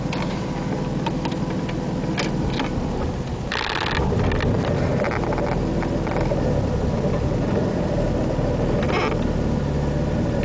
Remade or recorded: recorded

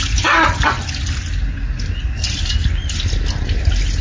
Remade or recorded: recorded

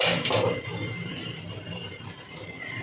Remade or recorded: remade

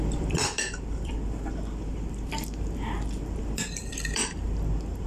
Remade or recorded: remade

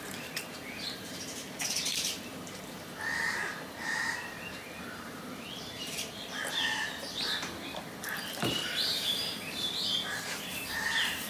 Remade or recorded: remade